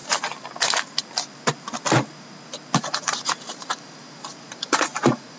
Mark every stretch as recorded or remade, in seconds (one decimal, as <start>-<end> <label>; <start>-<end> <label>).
0.0-2.8 recorded; 2.8-5.4 remade